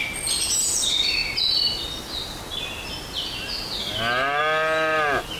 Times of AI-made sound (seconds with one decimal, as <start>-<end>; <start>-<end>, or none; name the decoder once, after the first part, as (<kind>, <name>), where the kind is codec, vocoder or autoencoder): none